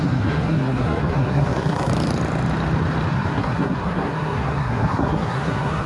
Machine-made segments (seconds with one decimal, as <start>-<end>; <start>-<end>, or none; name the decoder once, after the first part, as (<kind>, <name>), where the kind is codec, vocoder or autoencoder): 0.0-1.9 (codec, SNAC); 3.1-5.9